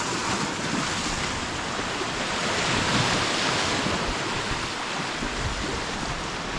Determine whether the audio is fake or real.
real